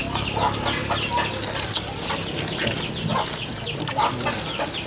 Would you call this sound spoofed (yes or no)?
no